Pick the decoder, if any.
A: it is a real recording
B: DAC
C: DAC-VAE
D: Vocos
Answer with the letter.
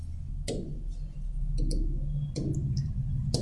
A